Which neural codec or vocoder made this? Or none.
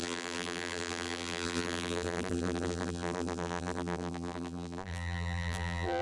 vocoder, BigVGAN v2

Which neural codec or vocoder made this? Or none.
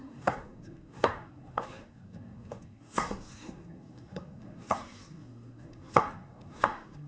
codec, SNAC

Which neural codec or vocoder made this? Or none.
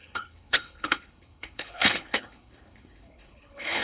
codec, HILCodec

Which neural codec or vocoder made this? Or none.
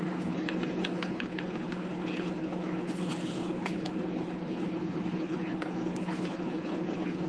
codec, HILCodec